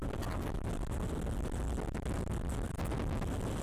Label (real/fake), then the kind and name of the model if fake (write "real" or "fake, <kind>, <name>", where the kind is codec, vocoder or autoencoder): real